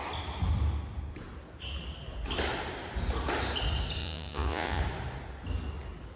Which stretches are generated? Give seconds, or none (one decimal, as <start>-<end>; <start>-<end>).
4.0-4.8